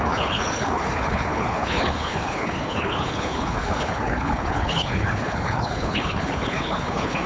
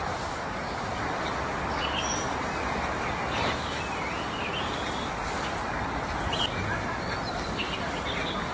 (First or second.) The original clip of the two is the second